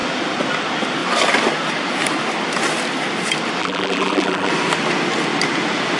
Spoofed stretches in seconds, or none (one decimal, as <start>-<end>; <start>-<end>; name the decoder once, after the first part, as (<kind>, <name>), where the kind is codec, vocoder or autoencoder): 3.6-4.5 (vocoder, BigVGAN v2)